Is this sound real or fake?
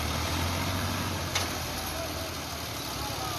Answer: real